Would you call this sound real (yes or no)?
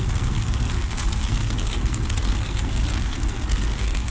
no